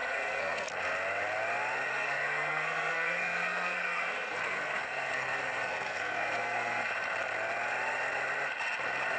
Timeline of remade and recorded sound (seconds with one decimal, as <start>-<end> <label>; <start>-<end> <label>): 0.0-0.7 remade; 0.7-1.9 recorded; 1.9-6.9 remade; 6.9-9.2 recorded